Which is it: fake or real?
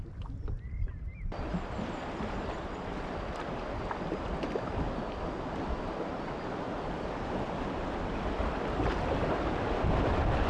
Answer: real